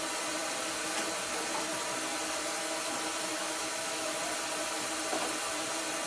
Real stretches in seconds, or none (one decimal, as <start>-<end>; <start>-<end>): 0.0-3.3; 4.2-6.1